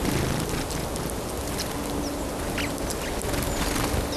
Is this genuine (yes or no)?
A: yes